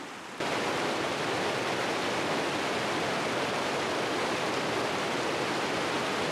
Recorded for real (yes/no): yes